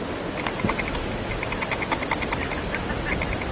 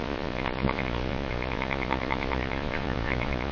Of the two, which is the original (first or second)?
first